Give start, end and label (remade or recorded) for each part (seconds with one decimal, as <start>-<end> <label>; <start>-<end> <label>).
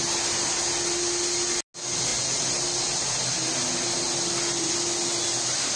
0.0-5.8 recorded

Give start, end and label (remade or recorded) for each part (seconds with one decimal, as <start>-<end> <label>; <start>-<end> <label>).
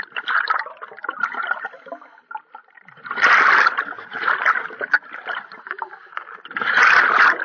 0.0-7.4 recorded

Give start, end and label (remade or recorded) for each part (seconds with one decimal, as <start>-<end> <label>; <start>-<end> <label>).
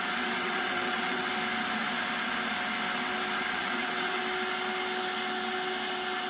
0.0-1.3 remade; 1.3-3.5 recorded; 3.5-4.2 remade; 4.2-6.3 recorded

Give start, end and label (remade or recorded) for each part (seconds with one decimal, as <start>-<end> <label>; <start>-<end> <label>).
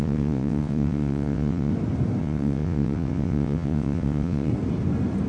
0.0-1.7 remade; 1.7-2.2 recorded; 2.2-4.5 remade; 4.5-5.3 recorded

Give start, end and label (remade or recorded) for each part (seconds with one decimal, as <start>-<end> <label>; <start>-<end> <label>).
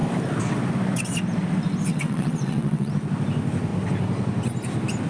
0.0-1.9 recorded; 1.9-2.9 remade; 2.9-5.1 recorded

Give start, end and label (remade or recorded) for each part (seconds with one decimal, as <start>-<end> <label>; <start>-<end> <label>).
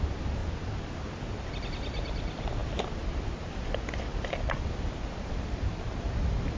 0.0-6.6 recorded